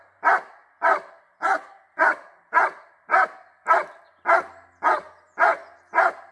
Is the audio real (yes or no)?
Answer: yes